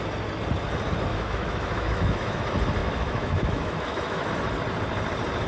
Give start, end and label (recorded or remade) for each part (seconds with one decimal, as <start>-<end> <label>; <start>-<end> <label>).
0.0-1.1 recorded; 1.1-2.4 remade; 2.4-2.8 recorded; 2.8-4.3 remade; 4.3-5.5 recorded